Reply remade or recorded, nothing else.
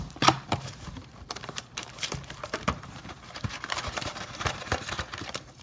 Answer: remade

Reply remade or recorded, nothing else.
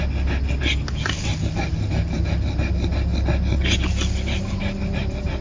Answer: recorded